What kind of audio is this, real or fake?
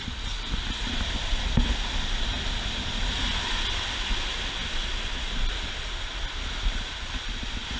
real